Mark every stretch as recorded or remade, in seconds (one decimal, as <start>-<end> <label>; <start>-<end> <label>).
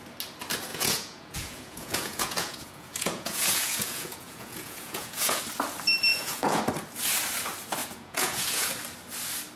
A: 0.0-0.7 recorded; 0.7-5.4 remade; 5.4-6.1 recorded; 6.1-6.6 remade; 6.6-7.8 recorded; 7.8-8.7 remade; 8.7-9.6 recorded